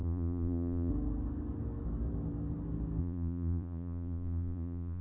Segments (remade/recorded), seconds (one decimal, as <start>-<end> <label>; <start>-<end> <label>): 0.0-0.9 remade; 0.9-3.0 recorded; 3.0-5.0 remade